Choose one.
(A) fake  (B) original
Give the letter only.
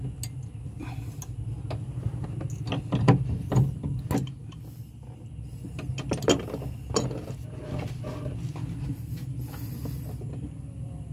B